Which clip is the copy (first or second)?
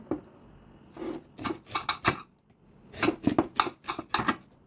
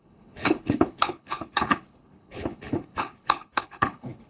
second